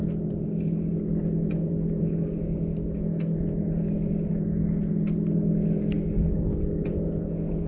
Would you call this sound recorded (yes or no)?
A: yes